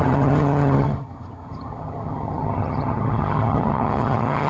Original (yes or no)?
no